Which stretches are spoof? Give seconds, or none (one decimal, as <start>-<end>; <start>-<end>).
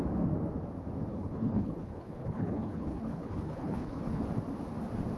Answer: 1.1-4.2